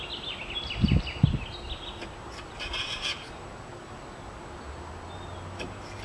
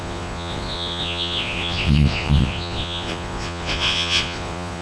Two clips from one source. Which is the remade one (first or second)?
second